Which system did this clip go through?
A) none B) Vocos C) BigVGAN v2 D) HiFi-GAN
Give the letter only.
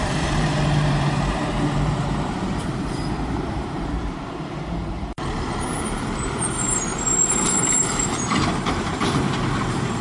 C